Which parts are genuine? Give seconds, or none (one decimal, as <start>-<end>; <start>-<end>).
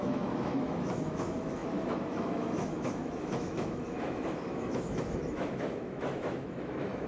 none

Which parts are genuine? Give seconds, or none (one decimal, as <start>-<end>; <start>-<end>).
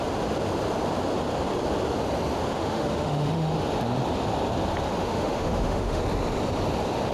0.0-2.6; 3.5-5.0; 6.0-7.1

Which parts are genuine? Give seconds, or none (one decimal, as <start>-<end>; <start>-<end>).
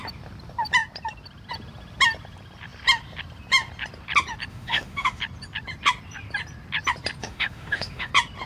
0.0-4.5; 5.2-7.2; 8.1-8.5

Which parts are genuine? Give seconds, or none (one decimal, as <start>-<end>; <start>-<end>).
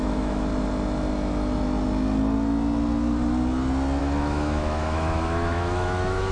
0.5-4.0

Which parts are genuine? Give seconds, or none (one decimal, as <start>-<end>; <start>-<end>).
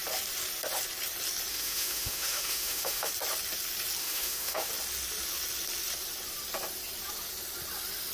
0.0-1.5; 3.1-4.0; 4.7-8.1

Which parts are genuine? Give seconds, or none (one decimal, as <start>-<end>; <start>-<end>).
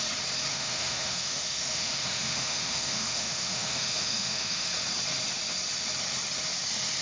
0.0-0.5; 4.7-7.0